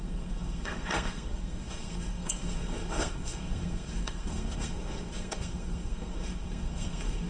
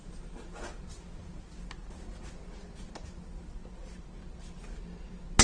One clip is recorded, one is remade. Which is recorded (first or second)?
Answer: second